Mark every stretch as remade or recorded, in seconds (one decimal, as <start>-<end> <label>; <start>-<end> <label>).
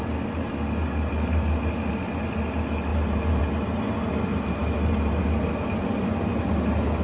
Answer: 0.0-2.9 recorded; 2.9-3.4 remade; 3.4-4.3 recorded; 4.3-5.2 remade; 5.2-7.0 recorded